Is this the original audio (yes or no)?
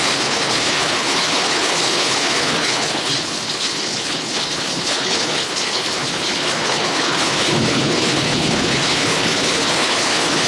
no